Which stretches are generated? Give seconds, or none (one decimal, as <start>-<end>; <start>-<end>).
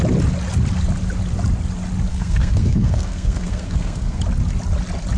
2.1-4.2